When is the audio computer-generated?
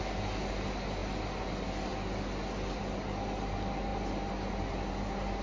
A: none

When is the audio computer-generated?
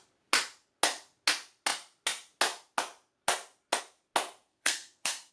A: 4.5-5.3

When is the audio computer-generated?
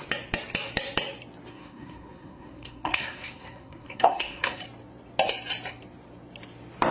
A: 1.5-4.6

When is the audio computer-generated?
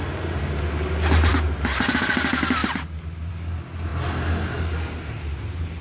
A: none